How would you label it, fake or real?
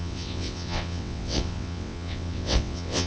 fake